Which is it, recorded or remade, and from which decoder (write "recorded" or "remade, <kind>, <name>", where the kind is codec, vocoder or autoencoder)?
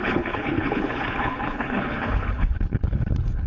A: remade, codec, HILCodec